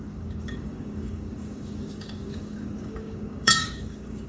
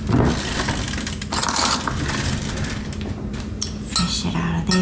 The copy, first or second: first